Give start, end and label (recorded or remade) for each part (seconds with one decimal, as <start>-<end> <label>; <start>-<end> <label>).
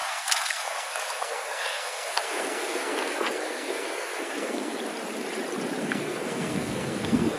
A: 0.0-4.8 remade; 4.8-5.8 recorded; 5.8-7.4 remade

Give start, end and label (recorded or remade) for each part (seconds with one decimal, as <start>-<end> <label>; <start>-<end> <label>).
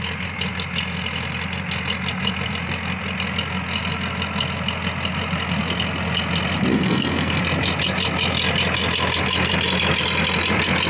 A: 0.0-6.7 recorded; 6.7-7.4 remade; 7.4-10.9 recorded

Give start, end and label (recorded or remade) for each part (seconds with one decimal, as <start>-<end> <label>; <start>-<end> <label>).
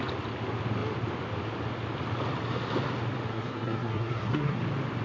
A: 0.0-3.3 recorded; 3.3-4.6 remade; 4.6-5.0 recorded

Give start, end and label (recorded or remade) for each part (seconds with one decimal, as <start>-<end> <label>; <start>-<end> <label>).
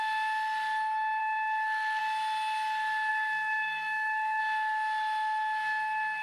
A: 0.0-1.2 recorded; 1.2-2.0 remade; 2.0-3.1 recorded; 3.1-4.4 remade; 4.4-6.2 recorded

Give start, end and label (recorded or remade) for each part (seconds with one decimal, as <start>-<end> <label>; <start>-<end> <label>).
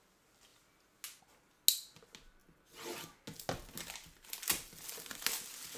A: 0.0-5.8 recorded